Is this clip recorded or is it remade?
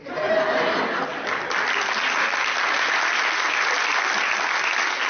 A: recorded